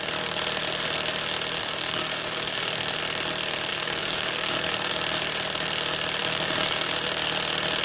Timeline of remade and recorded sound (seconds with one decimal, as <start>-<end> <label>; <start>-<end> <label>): 0.0-1.6 recorded; 1.6-3.0 remade; 3.0-3.7 recorded; 3.7-4.9 remade; 4.9-6.2 recorded; 6.2-6.9 remade; 6.9-7.8 recorded

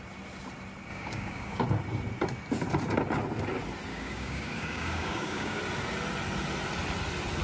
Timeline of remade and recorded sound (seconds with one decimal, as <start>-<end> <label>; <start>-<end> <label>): 0.0-0.9 recorded; 0.9-1.6 remade; 1.6-3.9 recorded; 3.9-5.6 remade; 5.6-7.4 recorded

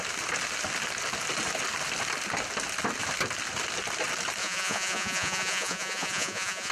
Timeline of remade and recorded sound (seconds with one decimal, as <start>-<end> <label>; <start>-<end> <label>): 0.0-4.4 recorded; 4.4-6.7 remade

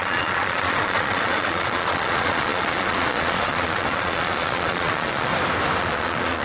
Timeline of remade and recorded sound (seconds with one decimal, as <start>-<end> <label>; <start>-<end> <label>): 0.0-5.3 remade; 5.3-5.8 recorded; 5.8-6.4 remade

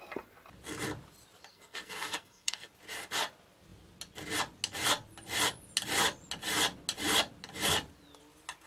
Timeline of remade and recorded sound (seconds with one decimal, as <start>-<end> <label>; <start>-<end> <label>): 0.0-1.5 recorded; 1.5-2.7 remade; 2.7-8.7 recorded

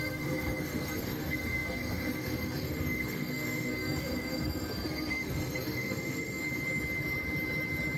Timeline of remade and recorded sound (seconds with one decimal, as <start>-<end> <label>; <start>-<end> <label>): 0.0-6.4 remade; 6.4-8.0 recorded

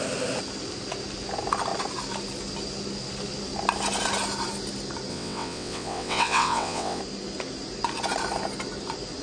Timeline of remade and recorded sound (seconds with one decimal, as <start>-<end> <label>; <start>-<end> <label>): 0.0-5.1 recorded; 5.1-7.0 remade; 7.0-9.2 recorded